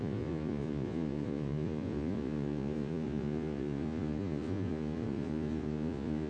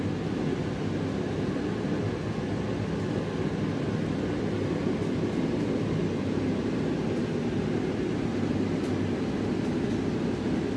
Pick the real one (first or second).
second